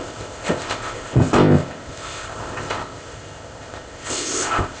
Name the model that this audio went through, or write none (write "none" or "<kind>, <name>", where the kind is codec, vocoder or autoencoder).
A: codec, ZipCodec